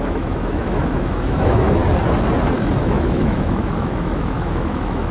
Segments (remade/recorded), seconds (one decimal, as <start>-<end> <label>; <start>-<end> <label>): 0.0-1.8 remade; 1.8-2.8 recorded; 2.8-5.1 remade